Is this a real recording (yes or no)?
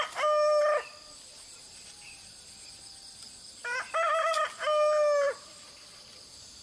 yes